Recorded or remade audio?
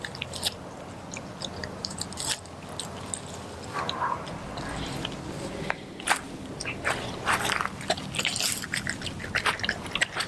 recorded